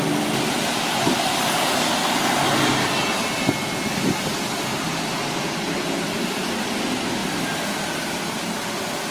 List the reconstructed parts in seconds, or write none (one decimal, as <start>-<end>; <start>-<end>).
none